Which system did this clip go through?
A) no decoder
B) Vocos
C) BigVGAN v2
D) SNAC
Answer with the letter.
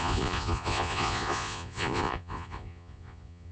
B